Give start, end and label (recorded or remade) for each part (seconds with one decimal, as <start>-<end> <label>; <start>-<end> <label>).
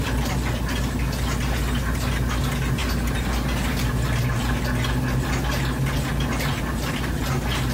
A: 0.0-7.7 recorded